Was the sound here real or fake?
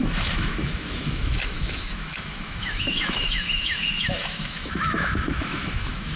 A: fake